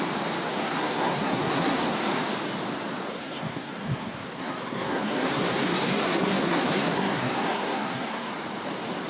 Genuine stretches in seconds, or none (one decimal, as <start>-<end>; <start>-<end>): 0.0-0.5; 2.1-3.1; 8.3-9.1